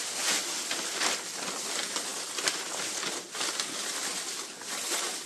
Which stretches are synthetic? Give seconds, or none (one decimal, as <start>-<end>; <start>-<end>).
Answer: none